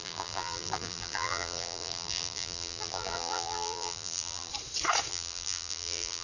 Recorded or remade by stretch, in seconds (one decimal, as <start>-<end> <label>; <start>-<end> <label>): 0.0-4.5 remade; 4.5-5.1 recorded; 5.1-6.2 remade